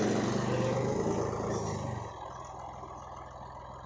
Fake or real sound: real